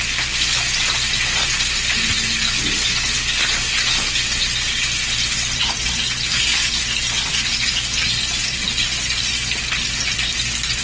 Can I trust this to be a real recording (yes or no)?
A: yes